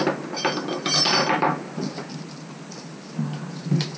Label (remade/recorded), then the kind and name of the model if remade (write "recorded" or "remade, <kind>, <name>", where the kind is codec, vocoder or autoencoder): recorded